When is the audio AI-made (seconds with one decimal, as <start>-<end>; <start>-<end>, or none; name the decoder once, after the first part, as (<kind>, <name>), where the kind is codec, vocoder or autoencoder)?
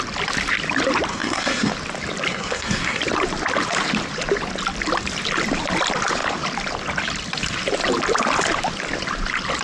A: 1.1-1.7 (codec, SNAC); 2.3-3.0